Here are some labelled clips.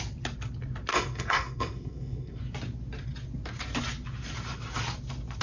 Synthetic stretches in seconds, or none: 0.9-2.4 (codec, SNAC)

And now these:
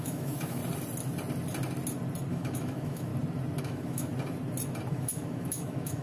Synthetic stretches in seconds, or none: 0.0-0.6 (autoencoder, DAC-VAE); 2.3-3.1; 3.6-4.1; 4.9-6.0

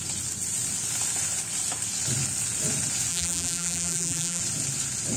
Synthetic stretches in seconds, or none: 3.1-4.4 (vocoder, BigVGAN v2)

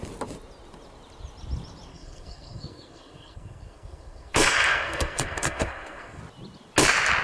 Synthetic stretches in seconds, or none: 1.9-6.2 (codec, SNAC)

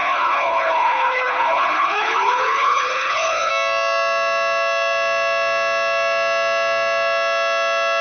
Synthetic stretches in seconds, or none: 0.0-3.5 (codec, HILCodec)